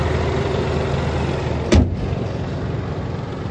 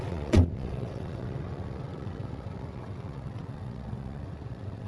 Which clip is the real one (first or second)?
first